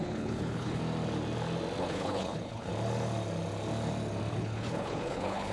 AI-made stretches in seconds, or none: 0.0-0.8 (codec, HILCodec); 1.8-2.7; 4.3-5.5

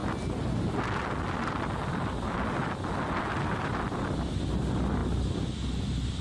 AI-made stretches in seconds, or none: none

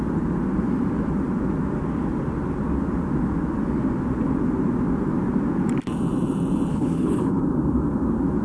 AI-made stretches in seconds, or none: 6.7-7.4 (codec, HILCodec)